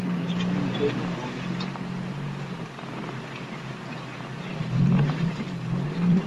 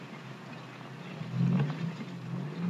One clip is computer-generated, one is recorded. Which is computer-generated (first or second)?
first